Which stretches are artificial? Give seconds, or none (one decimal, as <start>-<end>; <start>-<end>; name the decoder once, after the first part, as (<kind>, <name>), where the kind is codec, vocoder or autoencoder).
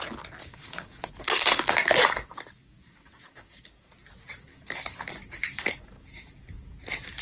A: 0.4-3.9 (codec, DAC); 4.5-6.8